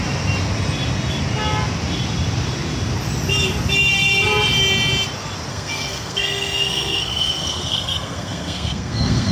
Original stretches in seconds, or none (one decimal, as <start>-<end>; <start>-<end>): 0.0-5.5